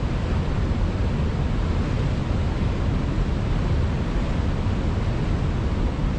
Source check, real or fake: real